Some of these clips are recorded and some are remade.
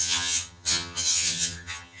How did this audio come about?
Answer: remade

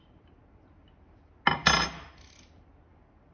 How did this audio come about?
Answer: recorded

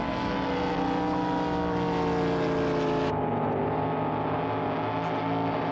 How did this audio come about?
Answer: recorded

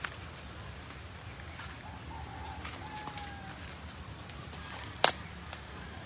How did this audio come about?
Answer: recorded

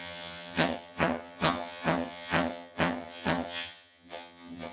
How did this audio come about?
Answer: remade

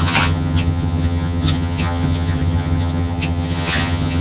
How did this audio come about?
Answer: remade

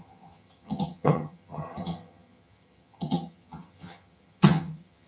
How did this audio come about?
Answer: remade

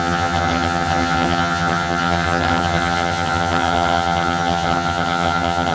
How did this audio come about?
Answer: remade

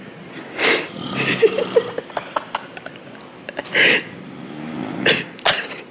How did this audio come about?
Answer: recorded